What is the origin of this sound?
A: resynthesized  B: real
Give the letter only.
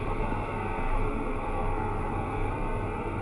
A